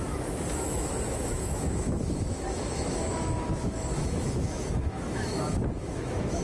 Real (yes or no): no